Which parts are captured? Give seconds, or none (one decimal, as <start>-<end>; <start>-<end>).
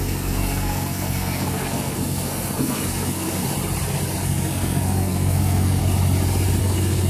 3.4-4.2; 5.8-6.6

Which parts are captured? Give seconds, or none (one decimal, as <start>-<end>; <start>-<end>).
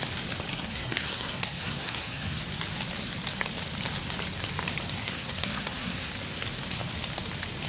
0.0-0.5; 2.4-5.0; 6.1-7.7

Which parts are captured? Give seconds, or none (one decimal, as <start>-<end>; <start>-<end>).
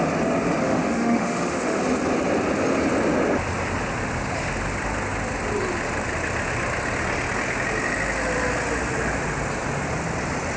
0.0-0.6; 1.8-10.6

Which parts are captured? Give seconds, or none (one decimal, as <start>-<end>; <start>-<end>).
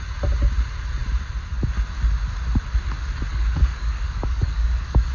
0.0-3.3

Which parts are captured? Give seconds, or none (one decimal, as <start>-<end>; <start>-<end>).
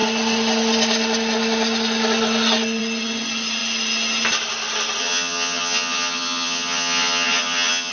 0.0-5.0